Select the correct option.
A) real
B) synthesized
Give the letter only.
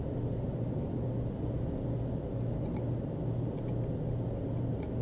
A